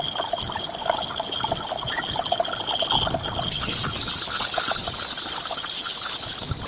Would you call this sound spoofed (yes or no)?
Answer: no